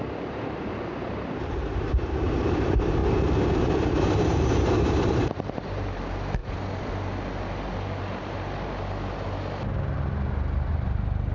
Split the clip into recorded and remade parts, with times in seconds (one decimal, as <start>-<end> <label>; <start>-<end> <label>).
0.0-3.0 remade; 3.0-3.6 recorded; 3.6-6.4 remade; 6.4-10.7 recorded; 10.7-11.3 remade